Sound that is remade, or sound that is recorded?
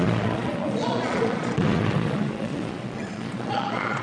remade